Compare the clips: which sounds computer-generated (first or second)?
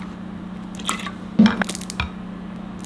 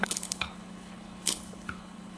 second